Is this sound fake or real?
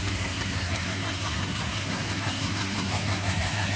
fake